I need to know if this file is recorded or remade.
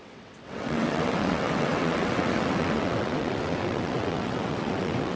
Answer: remade